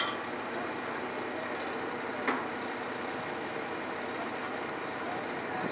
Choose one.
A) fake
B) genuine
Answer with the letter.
B